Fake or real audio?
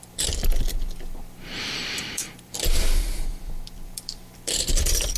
fake